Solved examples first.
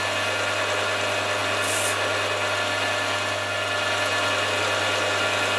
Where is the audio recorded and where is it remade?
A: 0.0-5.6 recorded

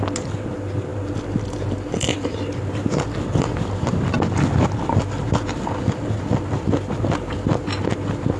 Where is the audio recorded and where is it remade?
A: 0.0-8.4 recorded

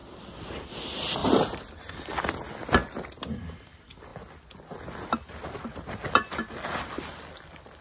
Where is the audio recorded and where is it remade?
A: 0.0-0.7 remade; 0.7-1.2 recorded; 1.2-1.8 remade; 1.8-7.8 recorded

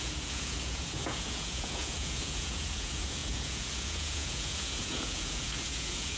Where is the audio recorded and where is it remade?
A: 0.0-6.2 remade

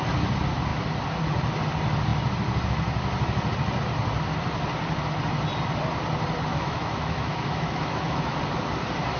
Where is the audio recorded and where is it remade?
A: 0.0-6.5 recorded; 6.5-8.4 remade; 8.4-9.2 recorded